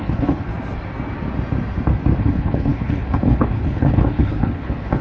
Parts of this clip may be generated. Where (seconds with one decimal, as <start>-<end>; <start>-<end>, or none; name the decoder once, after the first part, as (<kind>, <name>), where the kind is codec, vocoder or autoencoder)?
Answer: 0.0-0.5 (codec, HILCodec); 2.2-5.0